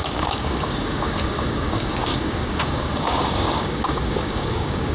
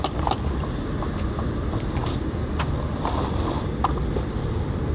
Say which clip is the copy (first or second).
first